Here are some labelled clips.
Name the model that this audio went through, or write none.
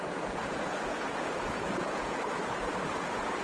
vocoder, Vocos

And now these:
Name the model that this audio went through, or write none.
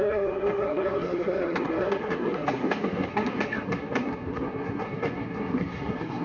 codec, SNAC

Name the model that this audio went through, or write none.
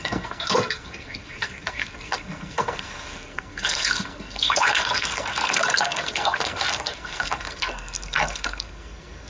codec, SNAC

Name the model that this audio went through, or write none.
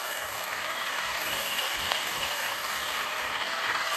codec, DAC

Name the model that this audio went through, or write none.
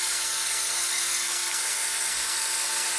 codec, SNAC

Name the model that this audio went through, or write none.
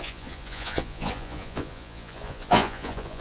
vocoder, Vocos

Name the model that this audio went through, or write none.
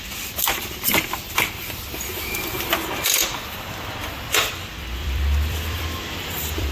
vocoder, BigVGAN v2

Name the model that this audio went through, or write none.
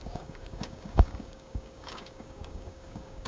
codec, DAC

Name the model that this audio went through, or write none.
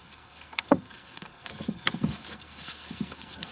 codec, SNAC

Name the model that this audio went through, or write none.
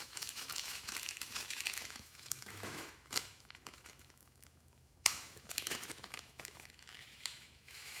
autoencoder, DAC-VAE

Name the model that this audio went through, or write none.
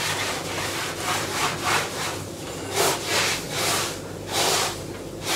vocoder, BigVGAN v2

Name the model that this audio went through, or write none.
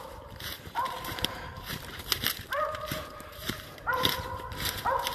vocoder, BigVGAN v2